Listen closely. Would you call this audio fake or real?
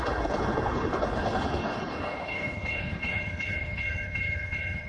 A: fake